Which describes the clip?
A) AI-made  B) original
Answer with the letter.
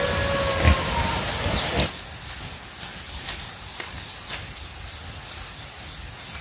B